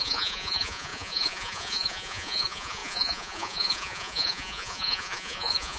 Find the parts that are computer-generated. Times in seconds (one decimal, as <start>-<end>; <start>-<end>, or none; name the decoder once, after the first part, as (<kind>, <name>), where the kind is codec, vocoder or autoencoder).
0.0-5.8 (vocoder, Vocos)